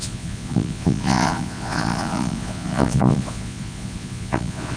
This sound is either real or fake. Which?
fake